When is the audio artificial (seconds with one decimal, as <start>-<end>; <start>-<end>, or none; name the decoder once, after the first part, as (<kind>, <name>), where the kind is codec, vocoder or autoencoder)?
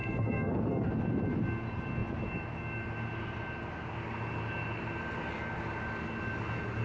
0.0-0.9 (codec, SNAC)